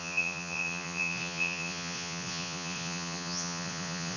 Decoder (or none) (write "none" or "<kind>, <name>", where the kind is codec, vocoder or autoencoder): vocoder, Vocos